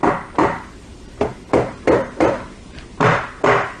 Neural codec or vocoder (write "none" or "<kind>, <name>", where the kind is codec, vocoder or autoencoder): none